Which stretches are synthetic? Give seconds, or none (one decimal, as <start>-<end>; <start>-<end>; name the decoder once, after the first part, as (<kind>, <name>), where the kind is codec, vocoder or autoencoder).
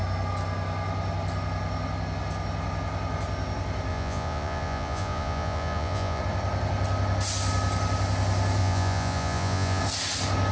3.9-6.2 (vocoder, Vocos); 8.6-9.8